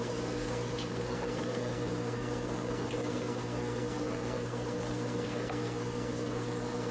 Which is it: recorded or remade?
remade